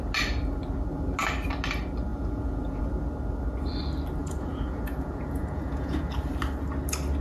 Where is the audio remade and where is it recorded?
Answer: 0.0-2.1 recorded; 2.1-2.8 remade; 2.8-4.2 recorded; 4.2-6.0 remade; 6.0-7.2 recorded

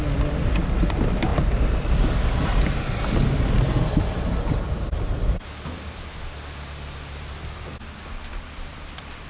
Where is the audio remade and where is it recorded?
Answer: 0.0-9.3 recorded

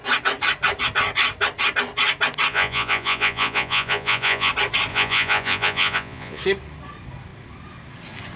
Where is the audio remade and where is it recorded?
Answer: 0.0-2.5 recorded; 2.5-4.5 remade; 4.5-4.9 recorded; 4.9-6.4 remade; 6.4-8.4 recorded

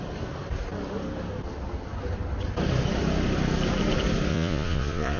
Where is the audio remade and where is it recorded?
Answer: 0.0-4.3 recorded; 4.3-5.2 remade

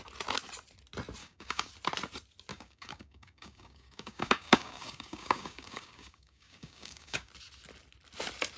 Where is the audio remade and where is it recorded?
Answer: 0.0-1.2 recorded; 1.2-1.7 remade; 1.7-2.5 recorded; 2.5-7.3 remade; 7.3-8.6 recorded

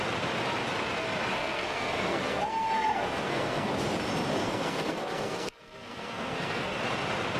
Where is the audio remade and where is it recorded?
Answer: 0.0-1.3 recorded; 1.3-3.7 remade; 3.7-4.4 recorded; 4.4-6.8 remade; 6.8-7.4 recorded

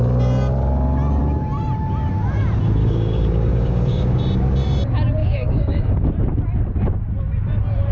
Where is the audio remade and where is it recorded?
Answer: 0.0-2.8 recorded; 2.8-4.2 remade; 4.2-5.2 recorded; 5.2-6.1 remade; 6.1-7.9 recorded